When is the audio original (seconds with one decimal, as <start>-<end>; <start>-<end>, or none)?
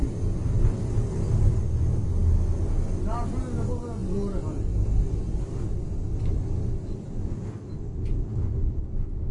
0.0-9.3